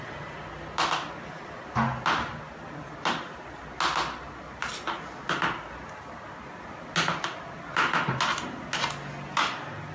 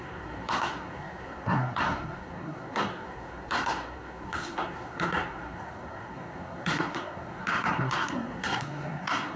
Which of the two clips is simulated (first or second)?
second